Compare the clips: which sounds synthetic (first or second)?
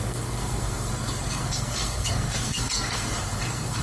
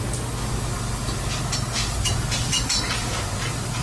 first